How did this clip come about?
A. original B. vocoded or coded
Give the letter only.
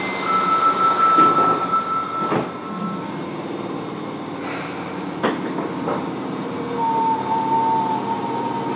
A